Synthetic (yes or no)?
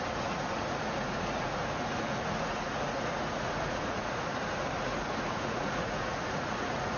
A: yes